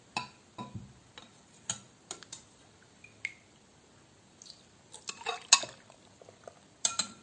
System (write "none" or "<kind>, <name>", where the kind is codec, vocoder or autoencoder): none